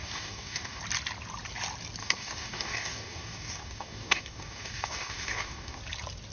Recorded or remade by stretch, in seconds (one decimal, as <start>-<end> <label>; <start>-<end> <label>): 0.0-0.8 remade; 0.8-2.0 recorded; 2.0-5.8 remade; 5.8-6.3 recorded